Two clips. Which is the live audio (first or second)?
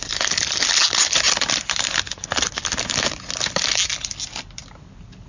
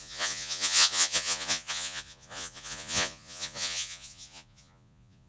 first